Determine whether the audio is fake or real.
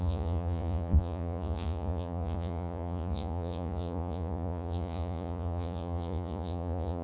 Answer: fake